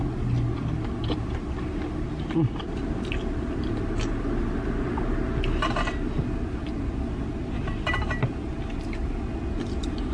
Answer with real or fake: real